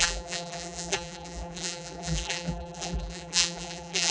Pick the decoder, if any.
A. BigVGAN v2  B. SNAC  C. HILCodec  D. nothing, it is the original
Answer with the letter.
A